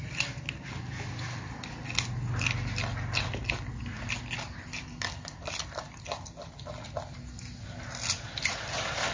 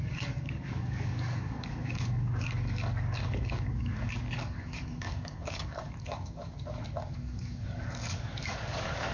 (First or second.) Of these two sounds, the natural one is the first